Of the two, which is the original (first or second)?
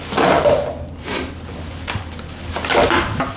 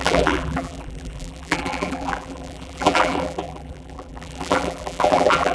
first